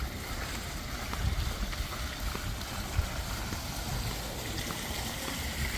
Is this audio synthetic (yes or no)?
no